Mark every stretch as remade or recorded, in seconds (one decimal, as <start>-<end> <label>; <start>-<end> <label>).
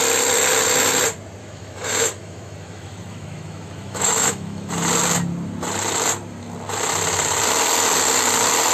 0.0-1.4 recorded; 1.4-4.7 remade; 4.7-8.7 recorded